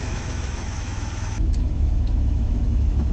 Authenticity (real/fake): fake